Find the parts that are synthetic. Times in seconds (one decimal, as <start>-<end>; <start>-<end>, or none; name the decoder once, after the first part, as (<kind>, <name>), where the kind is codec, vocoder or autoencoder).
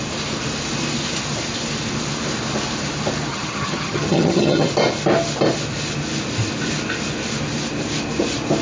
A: 3.3-4.7 (vocoder, HiFi-GAN)